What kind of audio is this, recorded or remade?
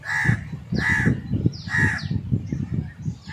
recorded